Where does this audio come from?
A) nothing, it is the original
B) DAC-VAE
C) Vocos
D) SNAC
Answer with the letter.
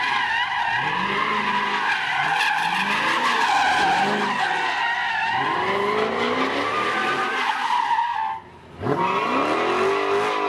A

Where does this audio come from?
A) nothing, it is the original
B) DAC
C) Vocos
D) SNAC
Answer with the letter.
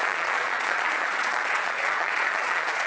C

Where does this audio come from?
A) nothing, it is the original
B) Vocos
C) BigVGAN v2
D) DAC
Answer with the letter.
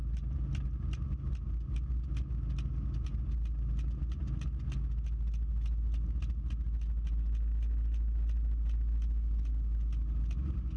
A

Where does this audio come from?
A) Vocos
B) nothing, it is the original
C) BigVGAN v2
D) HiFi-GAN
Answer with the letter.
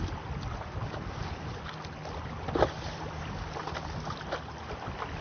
B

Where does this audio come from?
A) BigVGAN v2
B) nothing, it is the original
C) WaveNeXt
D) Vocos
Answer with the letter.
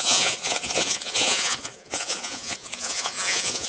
D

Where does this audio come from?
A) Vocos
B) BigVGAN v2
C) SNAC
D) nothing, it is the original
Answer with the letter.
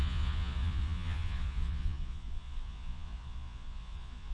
A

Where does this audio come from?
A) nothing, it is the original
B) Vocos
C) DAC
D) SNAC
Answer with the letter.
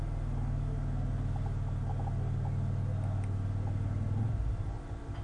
A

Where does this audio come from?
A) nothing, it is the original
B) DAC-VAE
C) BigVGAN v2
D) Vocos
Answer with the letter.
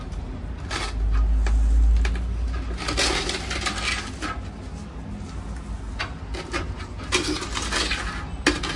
A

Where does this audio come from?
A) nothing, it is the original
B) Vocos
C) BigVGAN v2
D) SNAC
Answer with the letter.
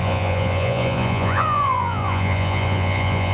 B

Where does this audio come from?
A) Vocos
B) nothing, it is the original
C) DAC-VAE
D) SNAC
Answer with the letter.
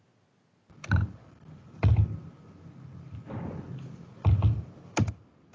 B